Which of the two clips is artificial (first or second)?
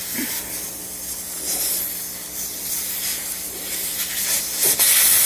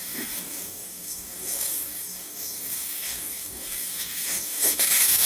second